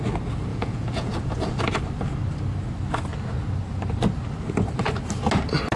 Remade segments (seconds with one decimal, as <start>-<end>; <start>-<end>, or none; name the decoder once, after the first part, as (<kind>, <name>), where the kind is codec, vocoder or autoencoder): 0.5-1.6 (vocoder, Vocos)